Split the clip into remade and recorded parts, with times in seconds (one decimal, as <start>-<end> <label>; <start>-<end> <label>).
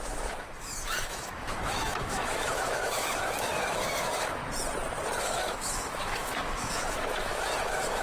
0.0-4.4 remade; 4.4-5.2 recorded; 5.2-8.0 remade